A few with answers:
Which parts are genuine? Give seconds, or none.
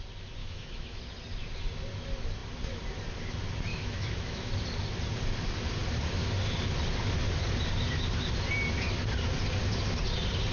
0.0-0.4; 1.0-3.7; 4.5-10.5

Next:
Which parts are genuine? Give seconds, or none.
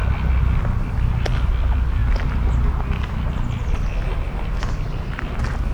0.0-0.8; 2.0-4.2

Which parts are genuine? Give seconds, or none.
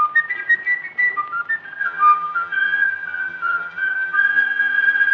0.0-1.8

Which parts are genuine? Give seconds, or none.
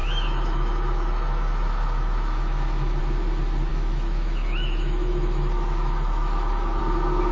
3.0-3.7; 6.8-7.3